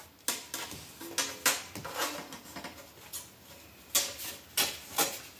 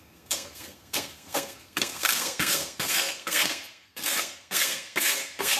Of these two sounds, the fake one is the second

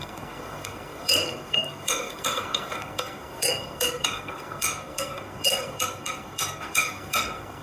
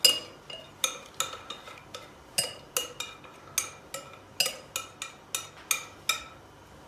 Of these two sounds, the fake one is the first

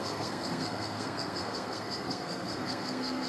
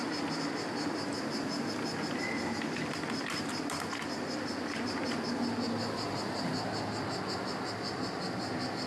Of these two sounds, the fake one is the first